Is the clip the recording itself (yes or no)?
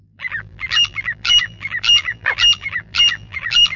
no